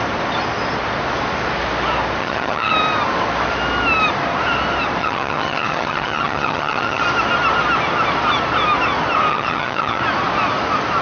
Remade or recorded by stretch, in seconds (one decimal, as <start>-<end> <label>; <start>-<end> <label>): 0.0-2.2 recorded; 2.2-2.7 remade; 2.7-5.0 recorded; 5.0-7.0 remade; 7.0-9.3 recorded; 9.3-10.0 remade; 10.0-11.0 recorded